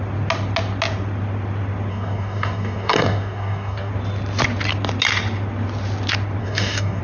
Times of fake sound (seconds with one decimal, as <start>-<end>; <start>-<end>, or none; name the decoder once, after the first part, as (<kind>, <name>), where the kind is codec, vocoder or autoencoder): 1.9-3.9 (codec, DAC); 6.4-7.0